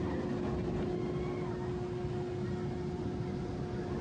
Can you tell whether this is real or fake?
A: real